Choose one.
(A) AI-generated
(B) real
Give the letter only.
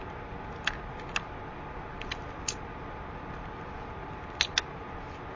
B